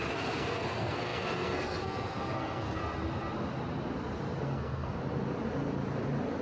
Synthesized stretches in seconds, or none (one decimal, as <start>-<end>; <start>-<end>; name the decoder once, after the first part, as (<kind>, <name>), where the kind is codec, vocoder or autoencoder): 0.0-2.8 (codec, SNAC); 4.4-5.0